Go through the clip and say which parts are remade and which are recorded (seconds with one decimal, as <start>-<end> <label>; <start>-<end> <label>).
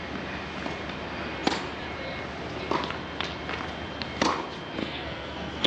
0.0-4.8 recorded; 4.8-5.7 remade